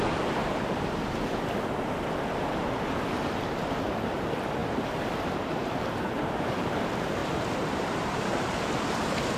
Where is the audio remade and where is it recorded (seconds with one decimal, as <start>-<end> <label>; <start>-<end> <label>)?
0.0-0.4 recorded; 0.4-1.2 remade; 1.2-4.6 recorded; 4.6-6.8 remade; 6.8-7.2 recorded; 7.2-8.5 remade; 8.5-9.4 recorded